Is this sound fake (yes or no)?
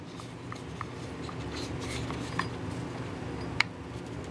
no